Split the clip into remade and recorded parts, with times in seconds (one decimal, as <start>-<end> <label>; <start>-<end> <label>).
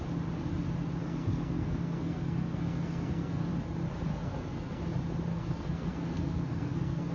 0.0-1.0 recorded; 1.0-3.5 remade; 3.5-4.1 recorded; 4.1-4.8 remade; 4.8-5.3 recorded; 5.3-7.1 remade